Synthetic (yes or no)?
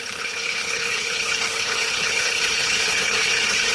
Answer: yes